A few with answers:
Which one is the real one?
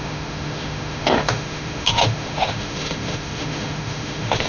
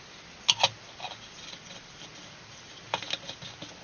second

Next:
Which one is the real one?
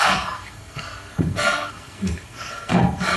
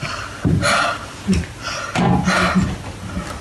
second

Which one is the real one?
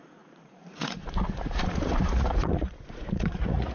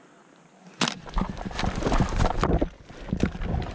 second